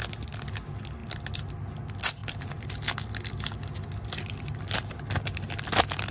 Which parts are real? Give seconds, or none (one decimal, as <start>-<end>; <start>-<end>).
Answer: 0.0-6.1